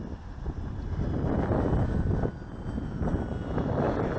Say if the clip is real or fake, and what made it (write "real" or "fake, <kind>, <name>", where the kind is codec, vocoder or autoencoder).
real